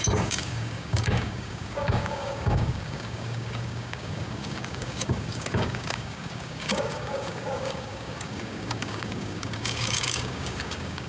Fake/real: fake